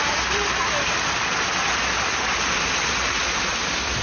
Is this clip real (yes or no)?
yes